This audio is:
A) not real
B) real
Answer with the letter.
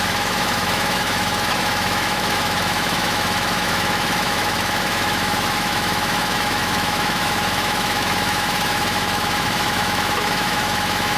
A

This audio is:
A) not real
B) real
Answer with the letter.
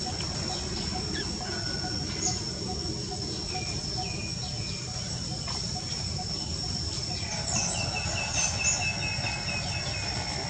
B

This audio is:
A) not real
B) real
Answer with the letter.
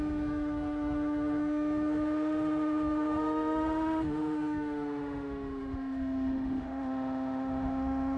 A